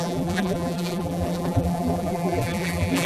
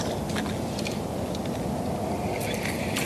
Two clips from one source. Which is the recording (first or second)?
second